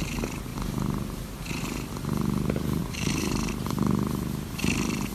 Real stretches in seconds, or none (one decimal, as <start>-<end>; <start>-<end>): 0.0-0.5; 1.9-2.8; 3.5-5.1